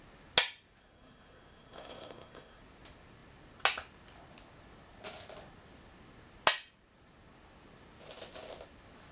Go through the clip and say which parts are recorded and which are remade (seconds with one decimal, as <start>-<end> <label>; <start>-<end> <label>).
0.0-0.8 recorded; 0.8-2.6 remade; 2.6-9.1 recorded